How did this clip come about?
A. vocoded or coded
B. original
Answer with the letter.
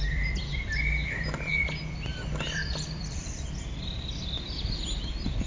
A